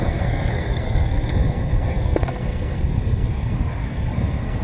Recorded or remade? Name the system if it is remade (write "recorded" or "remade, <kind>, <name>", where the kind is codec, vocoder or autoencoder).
remade, codec, SNAC